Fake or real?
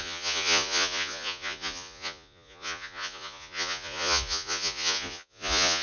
fake